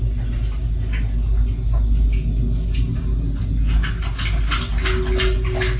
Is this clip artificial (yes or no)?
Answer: no